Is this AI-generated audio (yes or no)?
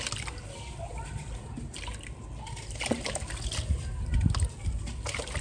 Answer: no